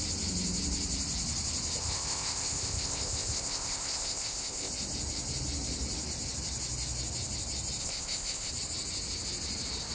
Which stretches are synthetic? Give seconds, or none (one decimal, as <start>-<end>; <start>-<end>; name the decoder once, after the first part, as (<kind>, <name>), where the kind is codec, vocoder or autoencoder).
1.8-4.7 (codec, ZipCodec); 7.8-8.5